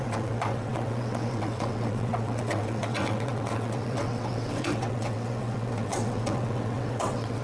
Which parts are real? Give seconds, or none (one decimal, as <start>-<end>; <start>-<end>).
none